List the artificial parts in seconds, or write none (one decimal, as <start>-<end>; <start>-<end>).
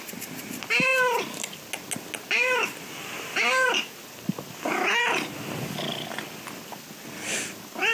none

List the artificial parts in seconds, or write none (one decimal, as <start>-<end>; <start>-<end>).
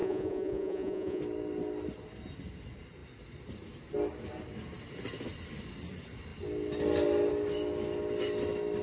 0.0-1.2